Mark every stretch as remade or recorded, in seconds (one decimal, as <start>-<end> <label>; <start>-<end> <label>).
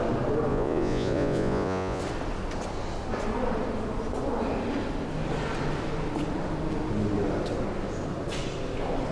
0.0-0.5 recorded; 0.5-2.0 remade; 2.0-9.1 recorded